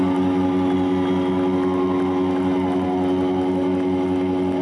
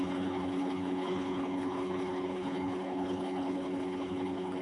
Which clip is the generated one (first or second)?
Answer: second